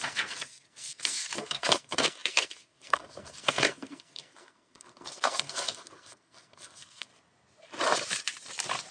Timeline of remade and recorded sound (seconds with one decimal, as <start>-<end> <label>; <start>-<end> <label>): 0.0-7.1 remade; 7.1-8.9 recorded

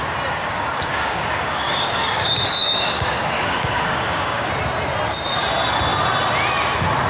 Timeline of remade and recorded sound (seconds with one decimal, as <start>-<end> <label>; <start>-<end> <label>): 0.0-0.4 recorded; 0.4-4.5 remade; 4.5-7.1 recorded